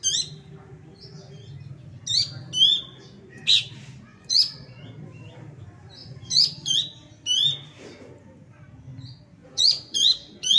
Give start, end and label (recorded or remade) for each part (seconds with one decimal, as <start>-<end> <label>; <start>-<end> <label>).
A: 0.0-4.1 recorded; 4.1-4.8 remade; 4.8-6.0 recorded; 6.0-6.8 remade; 6.8-9.4 recorded; 9.4-10.6 remade